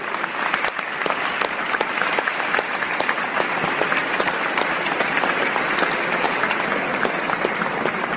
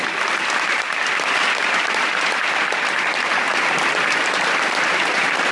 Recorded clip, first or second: first